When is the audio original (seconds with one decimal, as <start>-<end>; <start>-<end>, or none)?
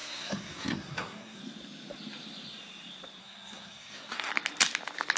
1.4-3.2; 4.3-5.2